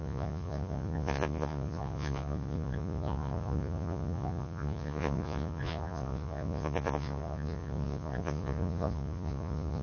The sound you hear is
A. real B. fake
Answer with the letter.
B